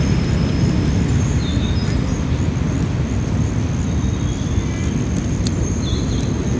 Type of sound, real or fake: real